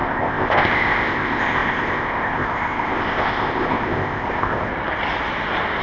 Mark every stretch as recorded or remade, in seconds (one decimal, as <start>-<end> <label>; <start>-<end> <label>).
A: 0.0-4.7 remade; 4.7-5.8 recorded